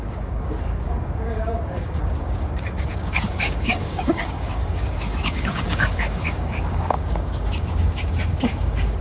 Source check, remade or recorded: remade